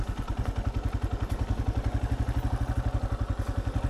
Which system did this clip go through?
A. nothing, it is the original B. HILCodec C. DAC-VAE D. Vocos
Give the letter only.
A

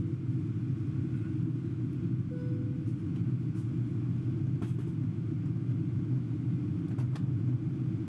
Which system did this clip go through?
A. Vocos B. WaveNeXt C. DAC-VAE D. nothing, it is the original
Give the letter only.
D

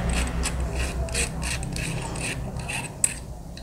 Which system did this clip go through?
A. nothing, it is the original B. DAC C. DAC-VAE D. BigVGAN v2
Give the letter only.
A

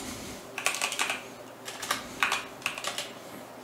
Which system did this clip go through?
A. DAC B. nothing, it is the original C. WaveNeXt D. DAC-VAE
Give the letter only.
B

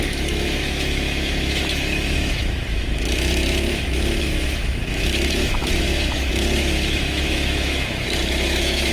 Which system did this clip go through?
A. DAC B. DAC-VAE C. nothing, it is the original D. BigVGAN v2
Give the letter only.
B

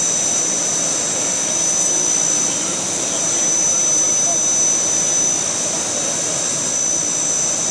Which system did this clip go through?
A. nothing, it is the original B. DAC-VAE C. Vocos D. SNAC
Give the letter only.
A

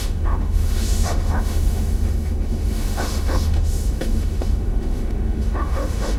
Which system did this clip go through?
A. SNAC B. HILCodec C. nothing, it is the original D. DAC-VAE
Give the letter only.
D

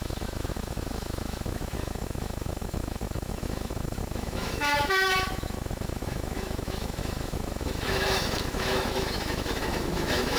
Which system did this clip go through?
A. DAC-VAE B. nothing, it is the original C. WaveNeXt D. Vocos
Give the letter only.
A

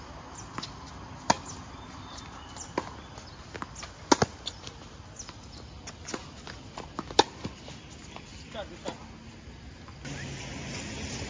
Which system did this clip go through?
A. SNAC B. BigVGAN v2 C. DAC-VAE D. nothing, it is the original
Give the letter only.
D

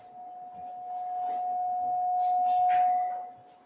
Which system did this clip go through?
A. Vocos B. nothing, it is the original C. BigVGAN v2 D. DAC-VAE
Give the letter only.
B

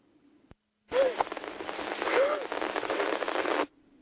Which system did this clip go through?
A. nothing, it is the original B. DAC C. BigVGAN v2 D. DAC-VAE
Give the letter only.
A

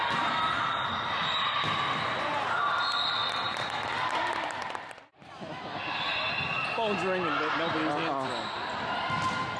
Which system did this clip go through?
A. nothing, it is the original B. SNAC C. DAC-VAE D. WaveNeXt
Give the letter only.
A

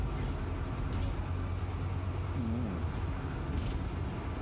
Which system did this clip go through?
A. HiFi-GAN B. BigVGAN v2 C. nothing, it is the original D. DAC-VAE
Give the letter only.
C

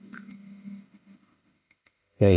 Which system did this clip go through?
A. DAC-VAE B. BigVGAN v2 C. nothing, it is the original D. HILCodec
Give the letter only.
A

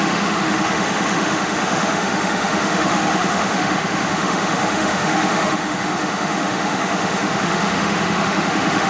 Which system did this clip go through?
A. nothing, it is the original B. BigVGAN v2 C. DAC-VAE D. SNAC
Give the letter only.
C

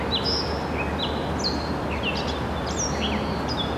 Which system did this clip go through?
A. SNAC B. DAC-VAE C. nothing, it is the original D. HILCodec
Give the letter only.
C